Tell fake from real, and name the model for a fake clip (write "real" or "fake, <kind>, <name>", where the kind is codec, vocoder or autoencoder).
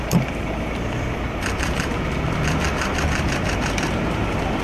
fake, vocoder, BigVGAN v2